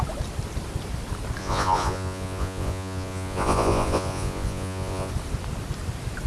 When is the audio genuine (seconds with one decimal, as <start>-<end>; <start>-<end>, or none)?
0.0-1.4; 5.1-6.3